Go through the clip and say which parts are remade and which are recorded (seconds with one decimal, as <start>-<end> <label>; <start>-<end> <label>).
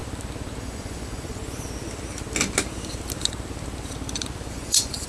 0.0-0.6 recorded; 0.6-1.4 remade; 1.4-4.5 recorded; 4.5-5.1 remade